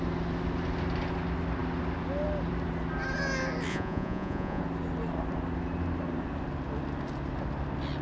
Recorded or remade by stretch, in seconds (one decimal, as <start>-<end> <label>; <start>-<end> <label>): 0.0-3.7 recorded; 3.7-4.6 remade; 4.6-8.0 recorded